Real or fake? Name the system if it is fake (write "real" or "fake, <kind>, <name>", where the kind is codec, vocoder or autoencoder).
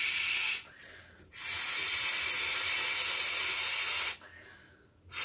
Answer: real